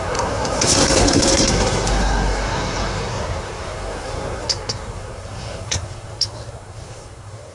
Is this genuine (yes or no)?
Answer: no